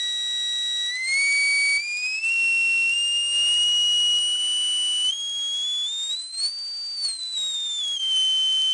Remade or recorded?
recorded